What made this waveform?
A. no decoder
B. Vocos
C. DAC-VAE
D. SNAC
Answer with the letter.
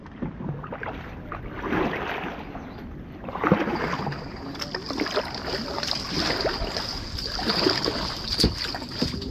A